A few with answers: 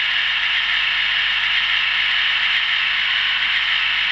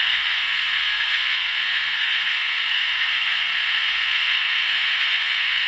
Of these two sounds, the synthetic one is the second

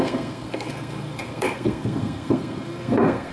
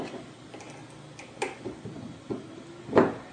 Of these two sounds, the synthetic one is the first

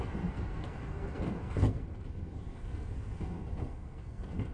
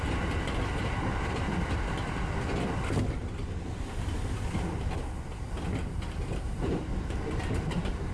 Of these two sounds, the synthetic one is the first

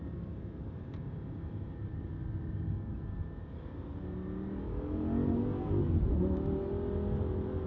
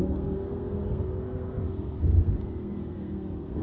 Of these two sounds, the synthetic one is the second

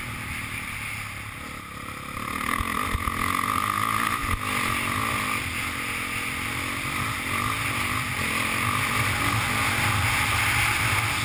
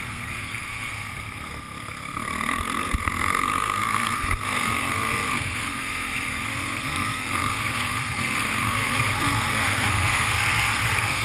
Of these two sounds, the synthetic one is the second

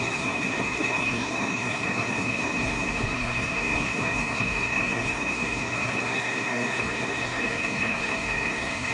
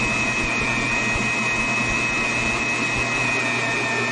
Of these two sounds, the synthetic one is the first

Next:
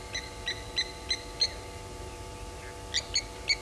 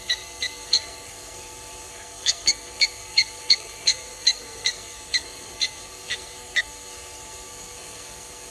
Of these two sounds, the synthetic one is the second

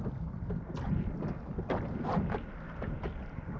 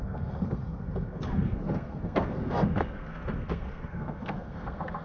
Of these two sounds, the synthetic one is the second